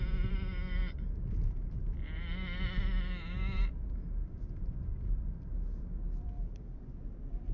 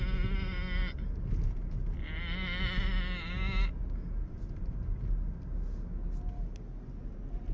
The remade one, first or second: first